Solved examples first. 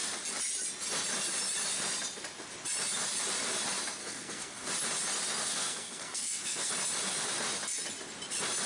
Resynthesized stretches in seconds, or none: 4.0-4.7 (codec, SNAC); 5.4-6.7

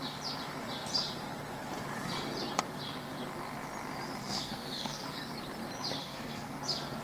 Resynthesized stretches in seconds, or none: 4.2-5.2 (codec, SNAC); 6.0-6.6

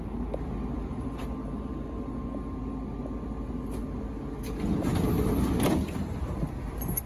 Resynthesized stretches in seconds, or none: none

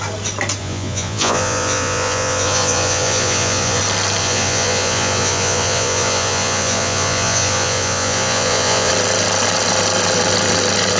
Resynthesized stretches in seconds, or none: 0.6-3.8 (vocoder, Vocos); 4.2-8.9

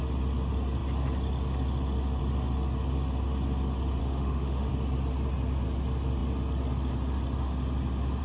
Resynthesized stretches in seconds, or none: 4.0-4.7 (autoencoder, DAC-VAE)

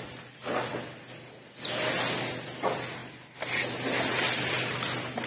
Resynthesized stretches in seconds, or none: none